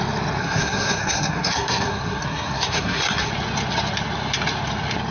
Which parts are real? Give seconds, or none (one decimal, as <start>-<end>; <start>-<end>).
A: 0.0-0.4; 3.3-5.1